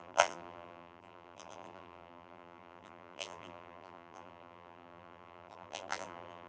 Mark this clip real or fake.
fake